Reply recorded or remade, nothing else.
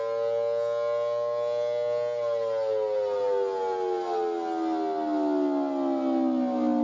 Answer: recorded